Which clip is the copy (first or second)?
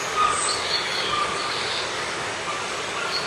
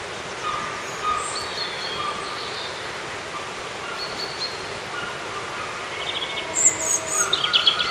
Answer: first